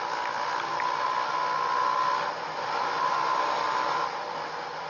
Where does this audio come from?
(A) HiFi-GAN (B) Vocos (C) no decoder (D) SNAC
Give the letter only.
C